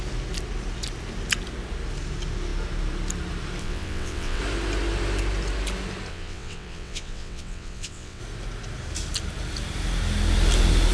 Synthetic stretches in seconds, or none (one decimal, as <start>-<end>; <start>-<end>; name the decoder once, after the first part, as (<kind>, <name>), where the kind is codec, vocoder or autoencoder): 3.6-4.4 (vocoder, WaveNeXt); 6.1-8.2